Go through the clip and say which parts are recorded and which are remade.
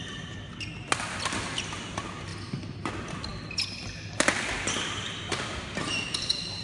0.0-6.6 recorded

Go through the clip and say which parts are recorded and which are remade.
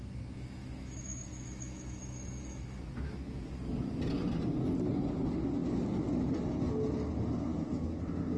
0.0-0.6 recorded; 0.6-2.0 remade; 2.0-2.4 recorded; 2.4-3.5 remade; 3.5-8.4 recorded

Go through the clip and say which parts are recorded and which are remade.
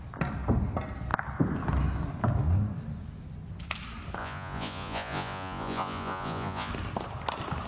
0.0-4.2 recorded; 4.2-6.7 remade; 6.7-7.7 recorded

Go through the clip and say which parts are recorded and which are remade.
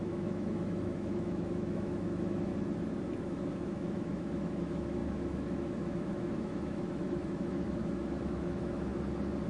0.0-2.5 remade; 2.5-3.2 recorded; 3.2-8.9 remade; 8.9-9.5 recorded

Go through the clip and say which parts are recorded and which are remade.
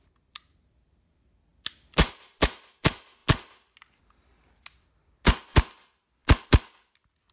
0.0-7.3 recorded